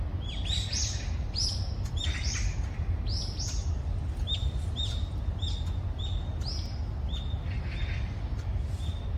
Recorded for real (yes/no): yes